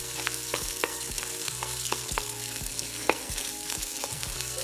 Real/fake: fake